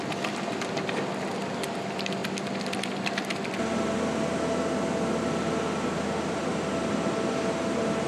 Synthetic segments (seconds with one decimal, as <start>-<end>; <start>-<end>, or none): none